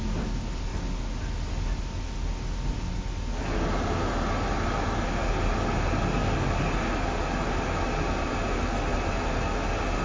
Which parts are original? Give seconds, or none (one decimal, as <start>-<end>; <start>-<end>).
0.0-10.0